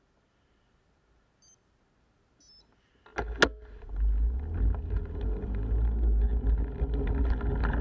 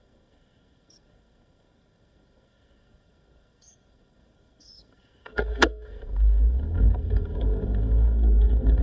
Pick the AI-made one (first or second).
second